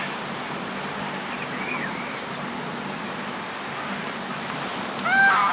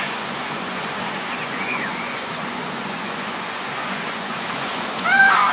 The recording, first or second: first